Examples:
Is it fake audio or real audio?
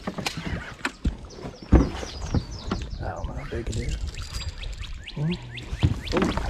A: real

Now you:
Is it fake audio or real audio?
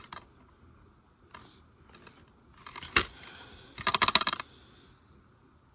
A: real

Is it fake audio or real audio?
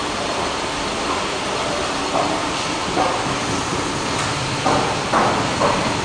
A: real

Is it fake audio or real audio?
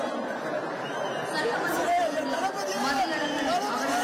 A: real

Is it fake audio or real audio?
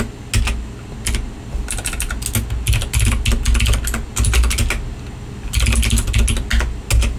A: real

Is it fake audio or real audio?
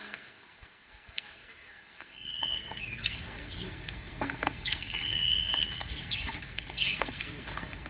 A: fake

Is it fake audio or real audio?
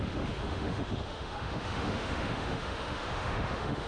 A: fake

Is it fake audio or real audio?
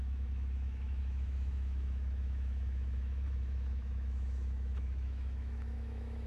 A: fake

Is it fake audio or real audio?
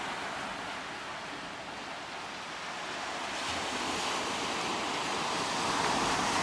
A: real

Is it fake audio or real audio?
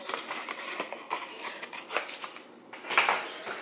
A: real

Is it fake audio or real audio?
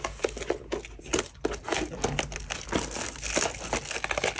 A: real